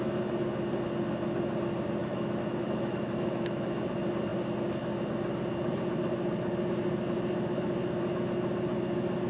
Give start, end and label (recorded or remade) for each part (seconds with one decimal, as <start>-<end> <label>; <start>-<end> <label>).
0.0-2.0 recorded; 2.0-3.8 remade; 3.8-9.3 recorded

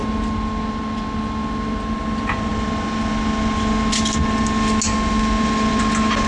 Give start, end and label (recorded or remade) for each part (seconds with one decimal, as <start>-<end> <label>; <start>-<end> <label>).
0.0-6.3 recorded

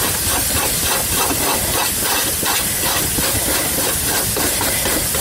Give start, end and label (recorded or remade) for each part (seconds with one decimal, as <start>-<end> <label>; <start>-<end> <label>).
0.0-5.2 recorded

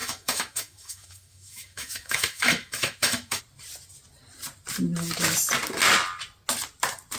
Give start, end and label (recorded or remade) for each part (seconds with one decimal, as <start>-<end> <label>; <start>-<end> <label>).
0.0-3.4 remade; 3.4-7.2 recorded

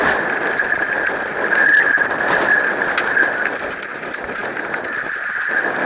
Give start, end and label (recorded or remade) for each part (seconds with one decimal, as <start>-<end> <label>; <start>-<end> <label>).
0.0-5.8 recorded

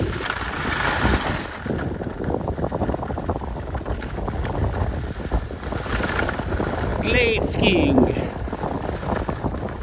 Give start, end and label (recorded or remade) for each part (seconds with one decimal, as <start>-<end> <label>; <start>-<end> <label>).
0.0-9.8 recorded